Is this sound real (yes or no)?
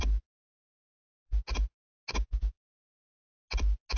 yes